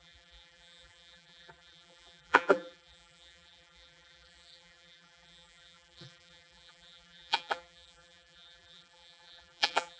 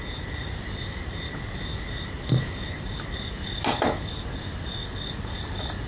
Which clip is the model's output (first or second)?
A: first